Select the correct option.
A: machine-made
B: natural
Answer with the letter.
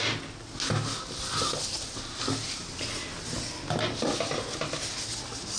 B